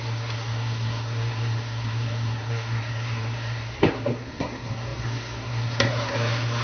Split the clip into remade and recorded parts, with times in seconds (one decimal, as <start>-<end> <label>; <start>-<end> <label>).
0.0-6.6 remade

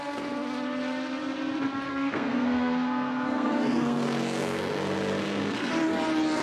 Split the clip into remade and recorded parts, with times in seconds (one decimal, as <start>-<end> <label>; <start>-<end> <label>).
0.0-1.9 recorded; 1.9-5.7 remade; 5.7-6.4 recorded

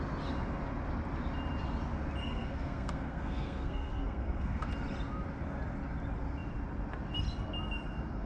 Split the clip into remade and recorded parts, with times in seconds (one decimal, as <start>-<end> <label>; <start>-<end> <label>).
0.0-2.2 recorded; 2.2-4.7 remade; 4.7-8.3 recorded

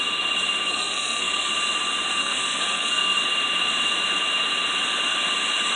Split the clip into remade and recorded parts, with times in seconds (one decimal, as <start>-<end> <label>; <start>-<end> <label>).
0.0-0.7 recorded; 0.7-1.5 remade; 1.5-2.2 recorded; 2.2-3.2 remade; 3.2-5.8 recorded

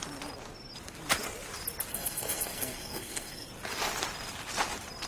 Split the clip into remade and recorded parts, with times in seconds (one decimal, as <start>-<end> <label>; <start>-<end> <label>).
0.0-1.9 recorded; 1.9-3.5 remade; 3.5-5.1 recorded

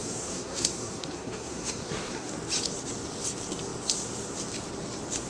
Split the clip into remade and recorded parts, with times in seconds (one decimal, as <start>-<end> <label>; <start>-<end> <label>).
0.0-2.3 remade; 2.3-5.3 recorded

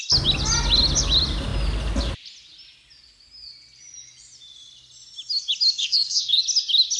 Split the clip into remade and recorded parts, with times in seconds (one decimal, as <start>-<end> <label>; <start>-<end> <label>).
0.0-5.8 recorded; 5.8-6.4 remade; 6.4-7.0 recorded